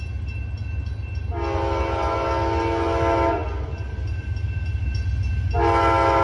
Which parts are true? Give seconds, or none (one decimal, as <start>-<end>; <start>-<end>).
0.0-6.2